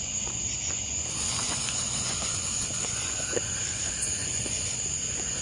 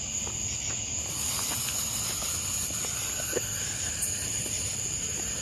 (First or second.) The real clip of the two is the second